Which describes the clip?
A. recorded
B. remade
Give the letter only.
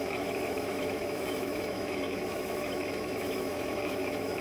B